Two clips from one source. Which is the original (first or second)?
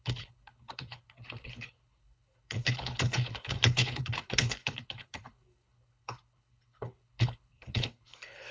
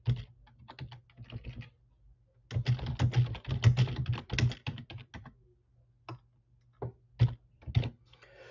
second